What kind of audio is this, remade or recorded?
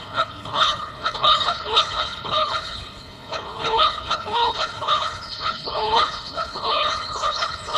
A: remade